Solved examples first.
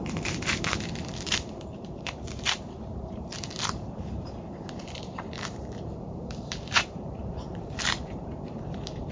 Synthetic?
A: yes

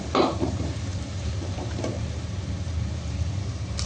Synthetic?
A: yes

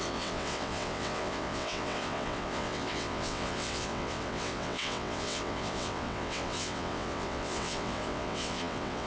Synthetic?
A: yes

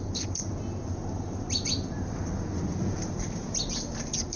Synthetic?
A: no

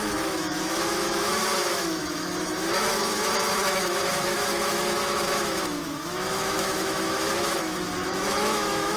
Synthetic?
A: yes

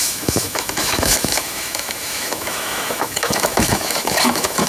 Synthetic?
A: yes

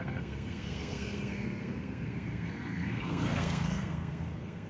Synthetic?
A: yes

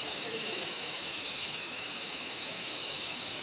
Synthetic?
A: yes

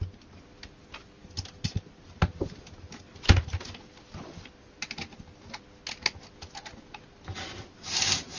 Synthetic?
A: no